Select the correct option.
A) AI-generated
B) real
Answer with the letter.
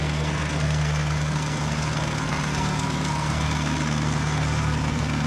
A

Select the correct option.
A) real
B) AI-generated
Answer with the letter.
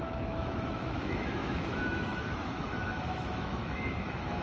B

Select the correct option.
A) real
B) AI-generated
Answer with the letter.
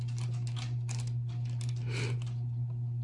A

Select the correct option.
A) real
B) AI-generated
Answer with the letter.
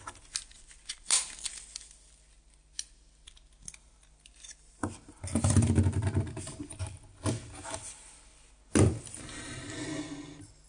A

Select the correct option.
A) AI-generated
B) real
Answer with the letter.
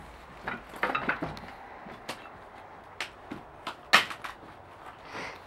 B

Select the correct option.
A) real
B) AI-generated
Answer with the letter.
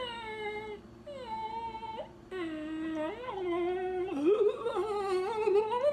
A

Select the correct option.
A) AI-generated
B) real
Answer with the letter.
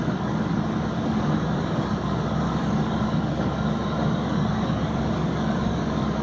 A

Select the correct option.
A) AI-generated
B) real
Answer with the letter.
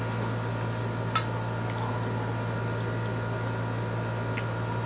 B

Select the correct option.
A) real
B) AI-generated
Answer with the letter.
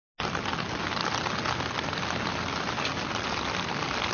A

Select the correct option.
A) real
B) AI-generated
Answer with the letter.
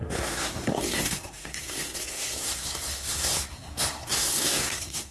B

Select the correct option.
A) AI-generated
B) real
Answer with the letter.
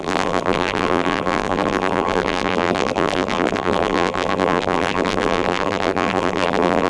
A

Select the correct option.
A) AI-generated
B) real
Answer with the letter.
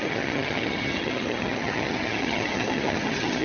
A